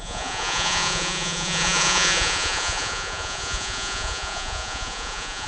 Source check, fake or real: fake